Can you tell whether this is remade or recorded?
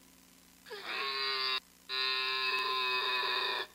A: recorded